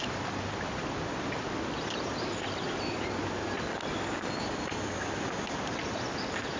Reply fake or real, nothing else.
real